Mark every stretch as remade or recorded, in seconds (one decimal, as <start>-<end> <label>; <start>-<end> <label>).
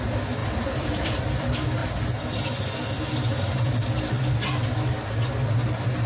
0.0-0.4 recorded; 0.4-1.2 remade; 1.2-6.1 recorded